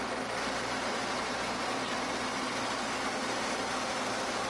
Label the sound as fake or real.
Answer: real